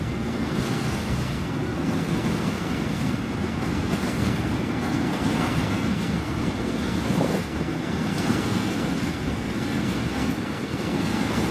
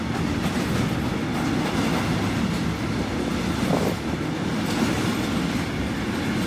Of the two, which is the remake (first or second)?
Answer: first